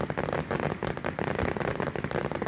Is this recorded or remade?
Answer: recorded